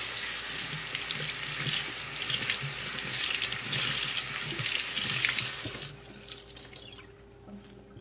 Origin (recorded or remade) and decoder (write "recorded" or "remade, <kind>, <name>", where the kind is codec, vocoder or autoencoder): recorded